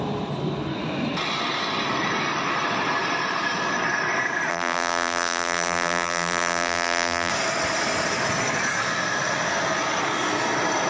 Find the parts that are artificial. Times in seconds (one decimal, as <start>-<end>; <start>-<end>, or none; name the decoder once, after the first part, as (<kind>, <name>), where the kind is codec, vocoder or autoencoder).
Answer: 4.5-7.3 (vocoder, BigVGAN v2)